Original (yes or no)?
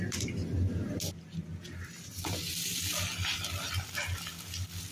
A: yes